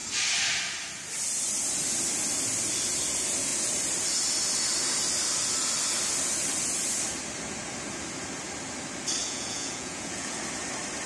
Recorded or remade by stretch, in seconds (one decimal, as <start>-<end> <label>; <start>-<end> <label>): 0.0-9.2 recorded; 9.2-10.4 remade; 10.4-11.1 recorded